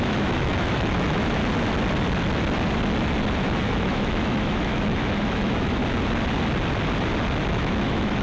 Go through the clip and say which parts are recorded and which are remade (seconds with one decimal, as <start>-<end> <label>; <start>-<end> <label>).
0.0-1.4 remade; 1.4-3.4 recorded; 3.4-5.8 remade; 5.8-7.5 recorded; 7.5-8.2 remade